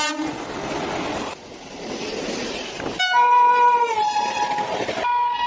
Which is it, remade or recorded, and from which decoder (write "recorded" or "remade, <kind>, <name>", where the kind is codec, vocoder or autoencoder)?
recorded